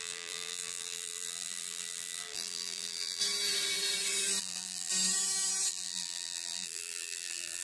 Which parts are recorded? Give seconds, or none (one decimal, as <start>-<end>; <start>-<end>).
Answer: 3.2-4.4; 4.9-5.7